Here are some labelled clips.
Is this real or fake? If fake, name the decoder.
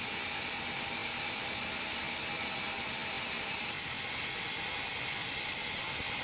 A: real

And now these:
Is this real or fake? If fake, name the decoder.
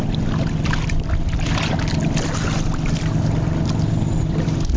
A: real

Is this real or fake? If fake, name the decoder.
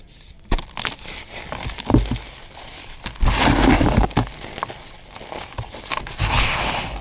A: real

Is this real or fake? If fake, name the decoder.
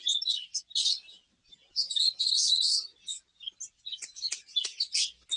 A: real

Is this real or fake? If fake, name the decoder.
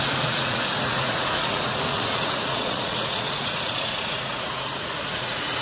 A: fake, vocoder, Vocos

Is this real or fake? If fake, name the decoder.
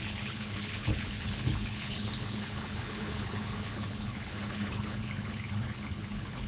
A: fake, codec, HILCodec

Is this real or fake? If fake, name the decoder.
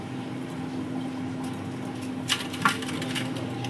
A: real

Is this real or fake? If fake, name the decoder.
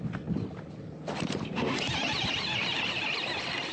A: real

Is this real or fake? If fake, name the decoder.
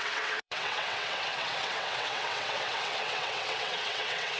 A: fake, vocoder, WaveNeXt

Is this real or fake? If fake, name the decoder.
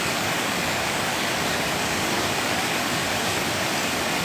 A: fake, codec, DAC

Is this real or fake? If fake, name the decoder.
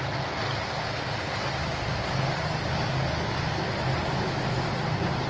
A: real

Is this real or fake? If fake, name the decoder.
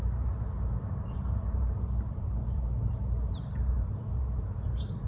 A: fake, vocoder, BigVGAN v2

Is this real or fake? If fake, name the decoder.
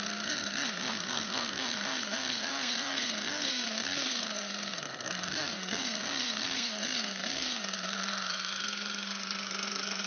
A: fake, codec, SNAC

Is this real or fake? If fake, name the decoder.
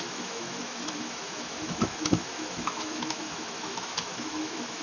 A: fake, autoencoder, DAC-VAE